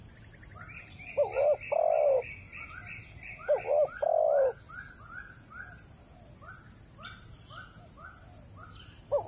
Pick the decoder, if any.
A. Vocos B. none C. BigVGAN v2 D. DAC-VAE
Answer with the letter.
B